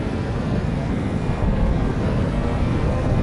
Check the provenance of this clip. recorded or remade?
remade